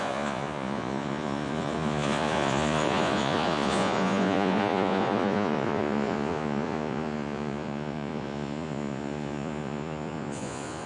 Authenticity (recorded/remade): remade